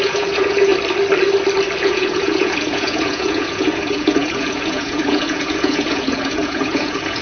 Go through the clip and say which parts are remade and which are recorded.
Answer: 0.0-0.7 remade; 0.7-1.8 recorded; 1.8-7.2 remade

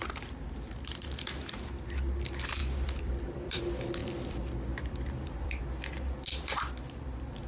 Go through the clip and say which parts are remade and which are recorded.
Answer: 0.0-0.7 remade; 0.7-2.6 recorded; 2.6-3.6 remade; 3.6-4.0 recorded; 4.0-5.6 remade; 5.6-7.5 recorded

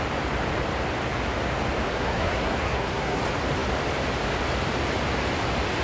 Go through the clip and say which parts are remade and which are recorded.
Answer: 0.0-1.9 recorded; 1.9-3.2 remade; 3.2-5.8 recorded